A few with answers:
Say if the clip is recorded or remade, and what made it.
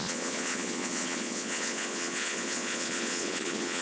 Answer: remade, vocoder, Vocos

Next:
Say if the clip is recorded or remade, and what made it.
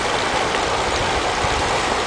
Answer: recorded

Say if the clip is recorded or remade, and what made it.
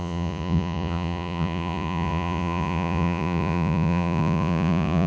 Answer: remade, vocoder, Vocos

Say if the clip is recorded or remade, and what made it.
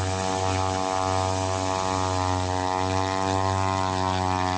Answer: recorded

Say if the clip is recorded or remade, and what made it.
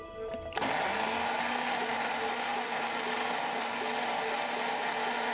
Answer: recorded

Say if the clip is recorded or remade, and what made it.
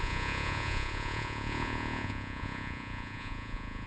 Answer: remade, vocoder, Vocos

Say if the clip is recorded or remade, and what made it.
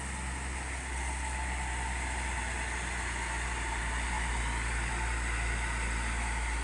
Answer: recorded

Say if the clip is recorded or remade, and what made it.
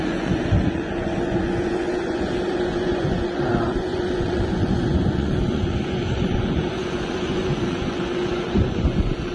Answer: remade, vocoder, Vocos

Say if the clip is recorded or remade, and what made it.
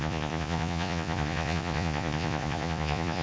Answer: remade, vocoder, Vocos